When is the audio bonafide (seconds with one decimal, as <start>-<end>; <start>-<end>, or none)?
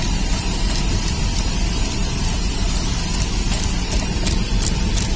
none